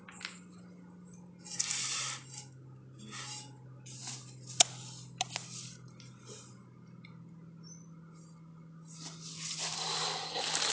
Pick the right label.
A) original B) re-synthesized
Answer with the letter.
A